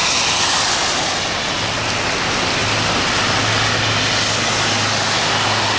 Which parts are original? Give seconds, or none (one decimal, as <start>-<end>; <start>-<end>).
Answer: 0.0-5.8